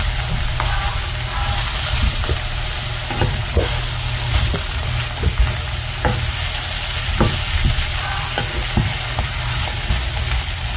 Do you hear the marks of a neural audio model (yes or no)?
no